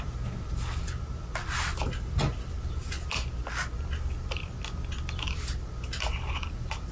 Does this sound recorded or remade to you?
recorded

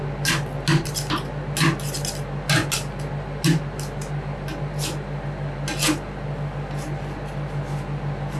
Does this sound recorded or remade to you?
recorded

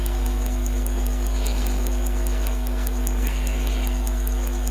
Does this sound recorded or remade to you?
remade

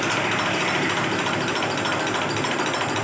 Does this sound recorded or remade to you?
recorded